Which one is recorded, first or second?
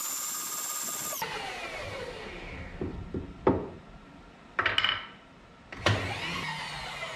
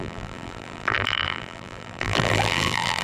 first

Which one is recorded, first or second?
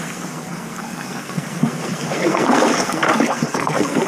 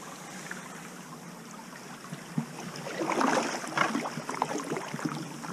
second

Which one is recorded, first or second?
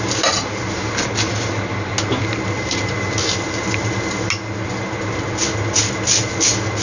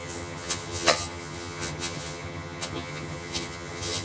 first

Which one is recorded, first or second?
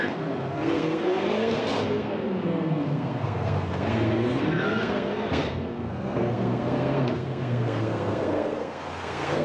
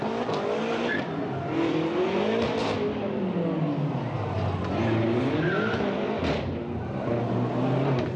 second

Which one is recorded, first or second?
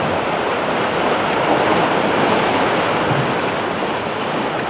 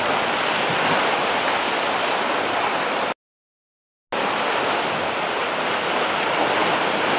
second